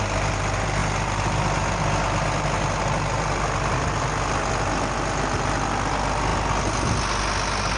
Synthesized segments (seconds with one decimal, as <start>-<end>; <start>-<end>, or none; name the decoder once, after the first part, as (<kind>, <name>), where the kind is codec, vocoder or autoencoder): none